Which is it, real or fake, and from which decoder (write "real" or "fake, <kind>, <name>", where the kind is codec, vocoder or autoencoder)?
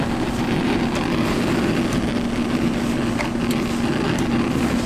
real